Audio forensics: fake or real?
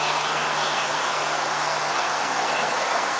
fake